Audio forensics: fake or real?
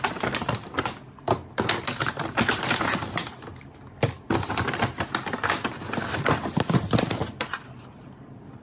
real